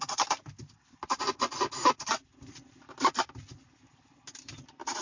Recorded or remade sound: recorded